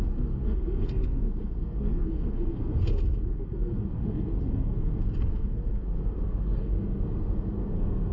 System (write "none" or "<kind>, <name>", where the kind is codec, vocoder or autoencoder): codec, SNAC